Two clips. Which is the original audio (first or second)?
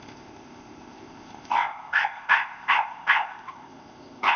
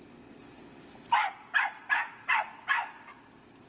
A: second